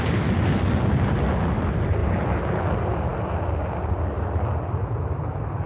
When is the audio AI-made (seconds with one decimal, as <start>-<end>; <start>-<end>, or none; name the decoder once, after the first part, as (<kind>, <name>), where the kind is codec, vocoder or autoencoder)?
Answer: none